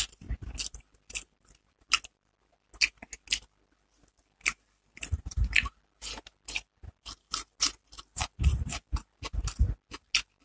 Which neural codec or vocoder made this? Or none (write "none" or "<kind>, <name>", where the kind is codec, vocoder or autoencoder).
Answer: none